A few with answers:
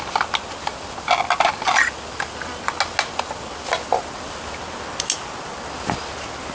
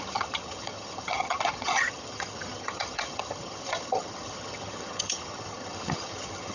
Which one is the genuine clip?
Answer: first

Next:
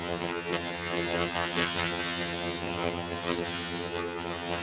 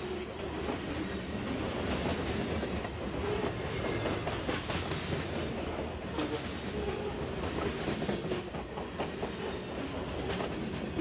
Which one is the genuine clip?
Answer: second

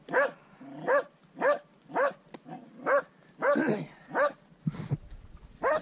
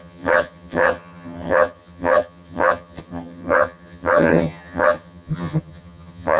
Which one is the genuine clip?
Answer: first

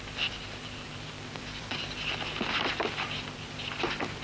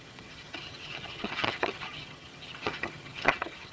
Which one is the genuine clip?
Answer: first